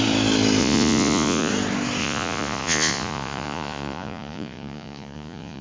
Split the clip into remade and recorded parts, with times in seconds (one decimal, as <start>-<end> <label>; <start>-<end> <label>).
0.0-0.6 recorded; 0.6-1.5 remade; 1.5-2.0 recorded; 2.0-5.6 remade